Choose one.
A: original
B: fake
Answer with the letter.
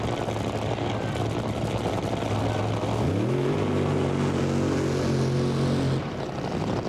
A